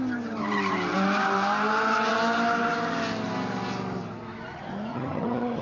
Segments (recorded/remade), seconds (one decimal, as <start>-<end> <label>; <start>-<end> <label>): 0.0-4.9 recorded; 4.9-5.6 remade